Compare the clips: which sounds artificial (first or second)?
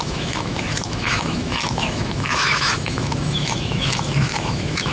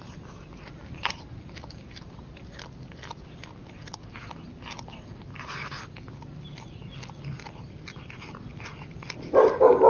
first